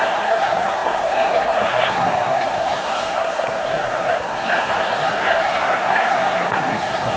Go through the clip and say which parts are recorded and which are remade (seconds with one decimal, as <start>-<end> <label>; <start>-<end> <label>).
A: 0.0-7.2 remade